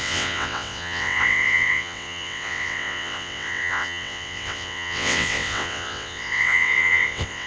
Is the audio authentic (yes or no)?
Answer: no